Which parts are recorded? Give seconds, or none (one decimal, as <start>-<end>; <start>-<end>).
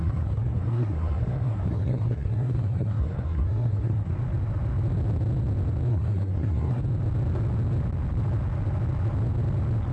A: 4.1-5.9; 6.8-9.9